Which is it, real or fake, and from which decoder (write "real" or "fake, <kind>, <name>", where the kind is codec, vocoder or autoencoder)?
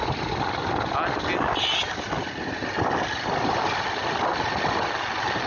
real